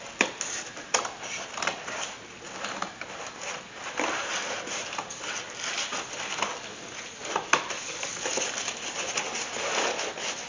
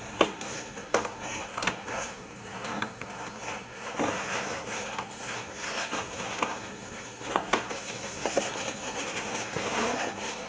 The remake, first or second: second